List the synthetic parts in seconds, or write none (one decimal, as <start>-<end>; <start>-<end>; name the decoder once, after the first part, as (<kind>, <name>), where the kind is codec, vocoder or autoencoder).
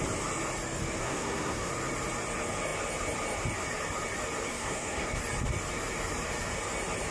1.0-1.7 (codec, SNAC); 4.5-5.2